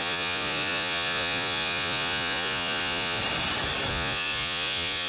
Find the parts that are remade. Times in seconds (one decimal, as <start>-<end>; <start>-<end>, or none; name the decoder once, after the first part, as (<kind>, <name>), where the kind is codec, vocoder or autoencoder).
0.0-3.2 (vocoder, Vocos); 3.9-5.1